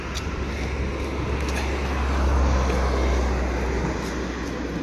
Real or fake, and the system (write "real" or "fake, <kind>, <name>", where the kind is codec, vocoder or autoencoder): real